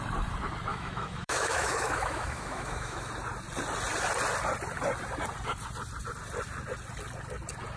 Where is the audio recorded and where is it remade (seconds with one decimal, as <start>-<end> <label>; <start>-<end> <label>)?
0.0-0.7 recorded; 0.7-3.1 remade; 3.1-7.8 recorded